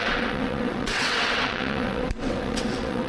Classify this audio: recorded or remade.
remade